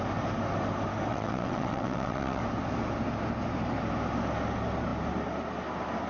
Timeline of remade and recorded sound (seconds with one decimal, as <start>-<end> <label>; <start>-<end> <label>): 0.0-1.1 recorded; 1.1-2.4 remade; 2.4-6.1 recorded